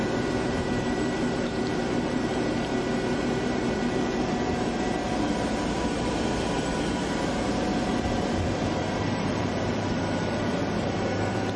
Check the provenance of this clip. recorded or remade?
remade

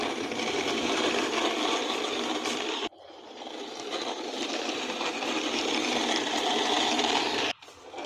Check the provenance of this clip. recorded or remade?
remade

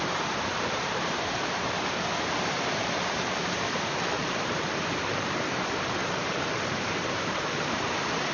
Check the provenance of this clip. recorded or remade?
remade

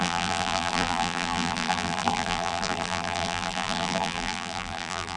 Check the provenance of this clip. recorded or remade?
remade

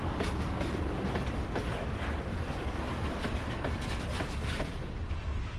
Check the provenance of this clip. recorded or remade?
recorded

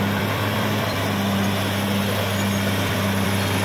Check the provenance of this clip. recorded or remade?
remade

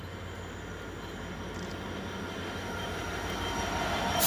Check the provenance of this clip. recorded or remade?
recorded